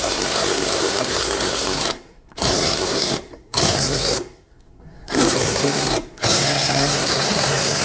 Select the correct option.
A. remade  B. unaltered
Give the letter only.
A